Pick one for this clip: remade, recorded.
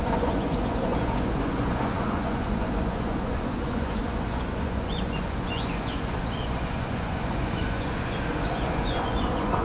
remade